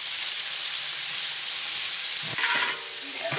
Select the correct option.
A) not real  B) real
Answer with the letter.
A